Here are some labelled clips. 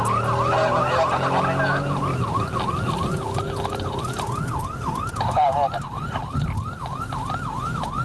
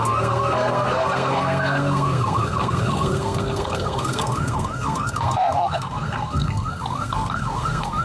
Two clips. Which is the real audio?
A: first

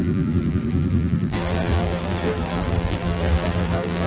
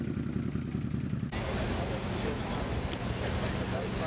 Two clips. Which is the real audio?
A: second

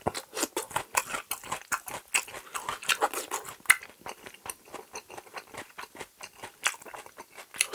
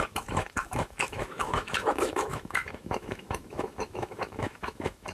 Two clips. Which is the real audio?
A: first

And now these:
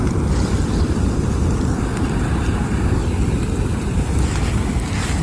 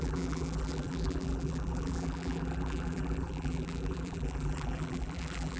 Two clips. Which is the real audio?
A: first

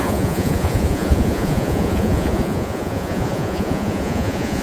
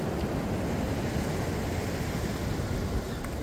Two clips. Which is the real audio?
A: second